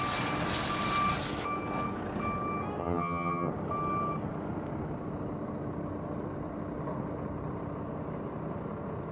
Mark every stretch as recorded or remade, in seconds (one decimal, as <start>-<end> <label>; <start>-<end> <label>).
0.0-2.8 recorded; 2.8-3.5 remade; 3.5-9.1 recorded

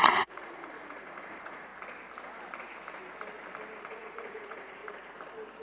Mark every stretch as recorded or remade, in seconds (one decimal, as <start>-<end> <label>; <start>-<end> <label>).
0.0-1.7 remade; 1.7-3.8 recorded; 3.8-4.8 remade; 4.8-5.6 recorded